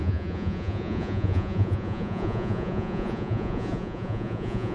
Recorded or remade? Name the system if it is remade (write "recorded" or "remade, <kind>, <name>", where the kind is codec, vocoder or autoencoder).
remade, vocoder, Vocos